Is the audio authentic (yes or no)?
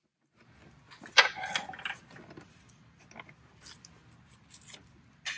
yes